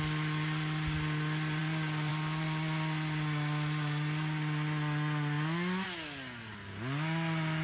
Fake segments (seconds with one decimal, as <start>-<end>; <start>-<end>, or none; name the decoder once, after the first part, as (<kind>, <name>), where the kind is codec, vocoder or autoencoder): none